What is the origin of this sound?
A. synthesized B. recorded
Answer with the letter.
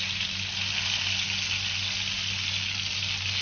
B